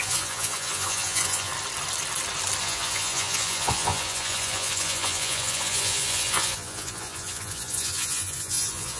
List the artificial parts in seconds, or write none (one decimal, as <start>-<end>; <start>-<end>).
0.0-1.5; 2.6-9.0